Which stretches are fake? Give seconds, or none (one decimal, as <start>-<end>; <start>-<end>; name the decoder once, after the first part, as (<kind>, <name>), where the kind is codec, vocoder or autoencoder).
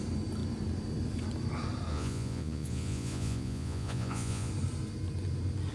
1.9-4.5 (vocoder, Vocos)